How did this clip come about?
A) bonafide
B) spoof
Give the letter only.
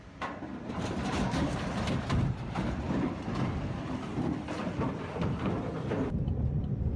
B